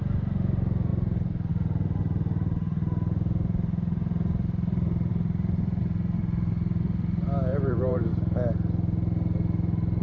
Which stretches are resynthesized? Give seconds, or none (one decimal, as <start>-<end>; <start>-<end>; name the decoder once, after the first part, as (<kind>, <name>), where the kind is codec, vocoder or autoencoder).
7.5-8.1 (vocoder, BigVGAN v2)